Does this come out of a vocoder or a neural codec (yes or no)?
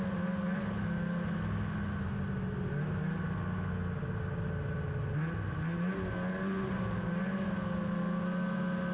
no